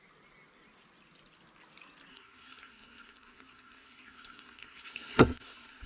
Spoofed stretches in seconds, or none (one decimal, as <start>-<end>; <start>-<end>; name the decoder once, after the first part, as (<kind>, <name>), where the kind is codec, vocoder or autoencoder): 2.1-5.9 (codec, SNAC)